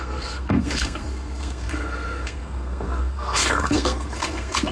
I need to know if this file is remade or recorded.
remade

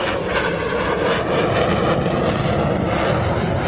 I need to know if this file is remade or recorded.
recorded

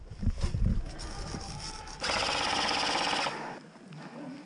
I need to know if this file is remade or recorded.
recorded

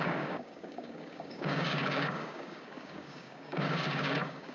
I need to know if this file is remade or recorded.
remade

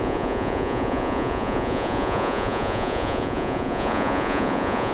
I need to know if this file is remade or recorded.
remade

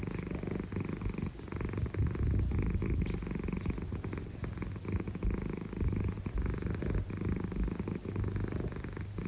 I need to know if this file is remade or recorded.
recorded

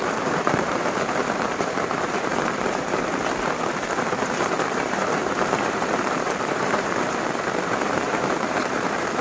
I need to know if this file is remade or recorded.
remade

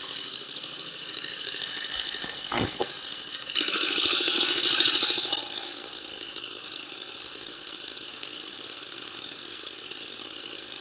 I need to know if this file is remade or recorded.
remade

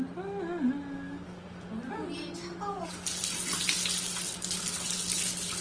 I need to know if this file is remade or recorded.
recorded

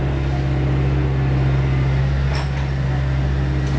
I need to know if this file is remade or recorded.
recorded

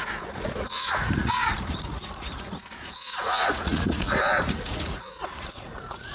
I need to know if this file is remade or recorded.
remade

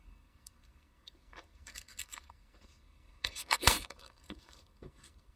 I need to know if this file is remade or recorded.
remade